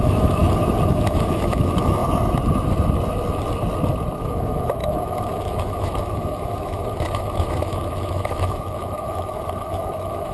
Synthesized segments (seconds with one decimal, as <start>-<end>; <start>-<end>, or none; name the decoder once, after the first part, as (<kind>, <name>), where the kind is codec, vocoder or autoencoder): 0.0-0.4 (autoencoder, DAC-VAE); 0.9-2.0; 4.2-10.3